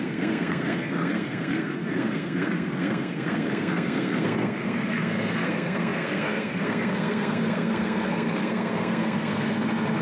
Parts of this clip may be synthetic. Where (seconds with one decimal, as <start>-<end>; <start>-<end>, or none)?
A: 0.0-10.0

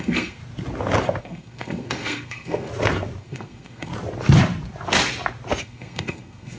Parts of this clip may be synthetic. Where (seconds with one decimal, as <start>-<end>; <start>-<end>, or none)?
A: 0.0-0.4; 1.2-2.7; 3.2-3.9; 5.6-6.6

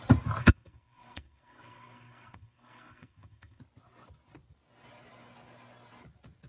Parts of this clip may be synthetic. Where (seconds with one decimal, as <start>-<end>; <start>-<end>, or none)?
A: 0.4-3.6

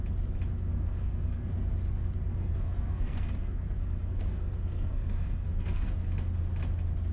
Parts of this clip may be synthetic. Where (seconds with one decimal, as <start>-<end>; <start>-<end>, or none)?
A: 0.7-1.5; 2.3-5.9

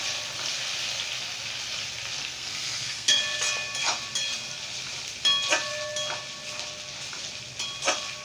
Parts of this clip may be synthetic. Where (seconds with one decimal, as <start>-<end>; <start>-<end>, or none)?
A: 2.2-3.2

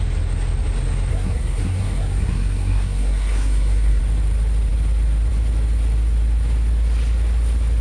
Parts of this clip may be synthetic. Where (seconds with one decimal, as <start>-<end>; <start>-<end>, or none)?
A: 1.1-4.0

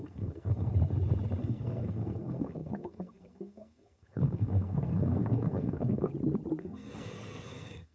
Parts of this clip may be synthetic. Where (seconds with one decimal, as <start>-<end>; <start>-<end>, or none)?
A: 0.0-0.7; 1.4-6.1; 6.6-7.9

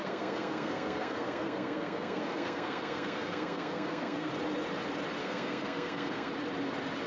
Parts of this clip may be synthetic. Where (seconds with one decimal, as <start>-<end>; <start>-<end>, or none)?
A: 0.0-4.3; 5.2-6.3